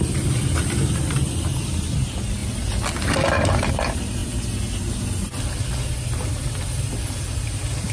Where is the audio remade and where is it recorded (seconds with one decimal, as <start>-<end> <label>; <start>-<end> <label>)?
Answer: 0.0-7.9 recorded